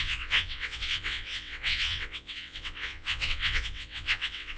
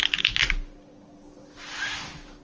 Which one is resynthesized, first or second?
first